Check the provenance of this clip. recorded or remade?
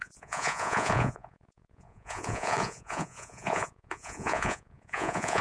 remade